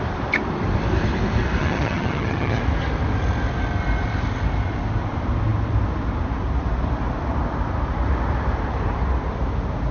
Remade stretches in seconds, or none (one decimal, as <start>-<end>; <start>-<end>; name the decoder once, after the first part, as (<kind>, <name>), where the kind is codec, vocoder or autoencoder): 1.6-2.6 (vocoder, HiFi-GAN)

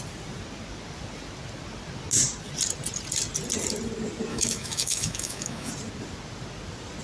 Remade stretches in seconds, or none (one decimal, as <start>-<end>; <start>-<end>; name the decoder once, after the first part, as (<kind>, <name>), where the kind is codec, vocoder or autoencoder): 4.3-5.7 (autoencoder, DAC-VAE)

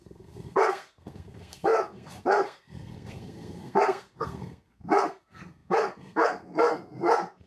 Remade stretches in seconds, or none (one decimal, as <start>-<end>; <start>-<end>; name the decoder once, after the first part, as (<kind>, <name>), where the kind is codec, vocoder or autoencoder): 0.0-7.5 (codec, SNAC)